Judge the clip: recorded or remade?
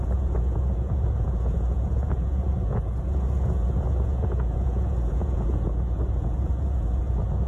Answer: remade